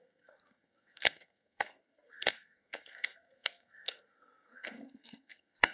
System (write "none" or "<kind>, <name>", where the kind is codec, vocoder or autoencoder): codec, SNAC